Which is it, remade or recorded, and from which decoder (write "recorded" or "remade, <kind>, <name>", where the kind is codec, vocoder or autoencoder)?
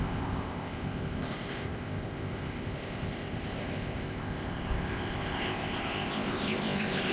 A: remade, codec, ZipCodec